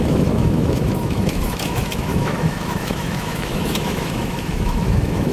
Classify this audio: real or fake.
fake